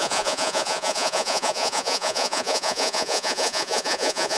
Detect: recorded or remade remade